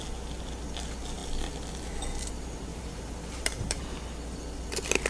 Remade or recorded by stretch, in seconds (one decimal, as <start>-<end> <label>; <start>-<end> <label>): 0.0-2.7 recorded; 2.7-3.8 remade; 3.8-5.1 recorded